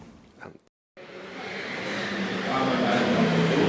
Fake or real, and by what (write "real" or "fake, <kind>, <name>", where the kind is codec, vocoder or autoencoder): real